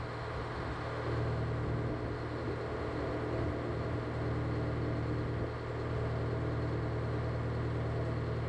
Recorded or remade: recorded